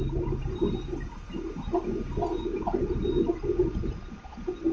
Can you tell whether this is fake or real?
real